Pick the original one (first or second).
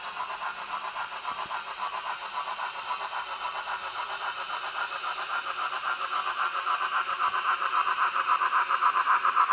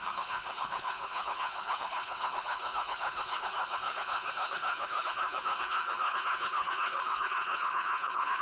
first